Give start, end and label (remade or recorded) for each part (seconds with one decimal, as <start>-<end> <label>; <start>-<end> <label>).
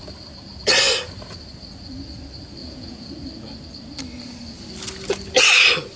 0.0-2.6 recorded; 2.6-3.1 remade; 3.1-6.0 recorded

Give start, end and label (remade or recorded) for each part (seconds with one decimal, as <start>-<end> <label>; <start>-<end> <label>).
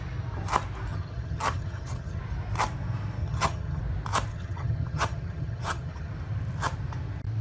0.0-0.9 recorded; 0.9-2.2 remade; 2.2-3.2 recorded; 3.2-3.8 remade; 3.8-4.3 recorded; 4.3-6.1 remade; 6.1-7.4 recorded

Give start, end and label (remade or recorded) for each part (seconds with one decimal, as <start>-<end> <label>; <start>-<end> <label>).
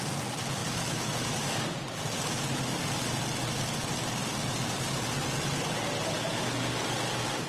0.0-0.6 recorded; 0.6-1.1 remade; 1.1-7.5 recorded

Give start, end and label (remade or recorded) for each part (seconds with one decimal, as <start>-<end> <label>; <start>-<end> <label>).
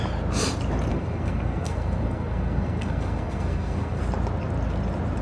0.0-0.9 recorded; 0.9-4.0 remade; 4.0-5.2 recorded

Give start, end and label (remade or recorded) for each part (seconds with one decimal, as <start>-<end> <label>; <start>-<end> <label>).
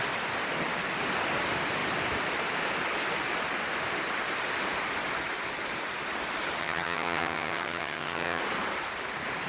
0.0-6.6 recorded; 6.6-8.4 remade; 8.4-9.5 recorded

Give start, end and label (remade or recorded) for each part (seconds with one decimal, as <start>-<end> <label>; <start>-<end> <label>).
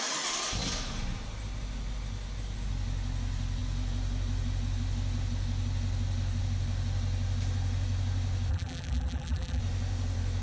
0.0-8.5 recorded; 8.5-9.6 remade; 9.6-10.4 recorded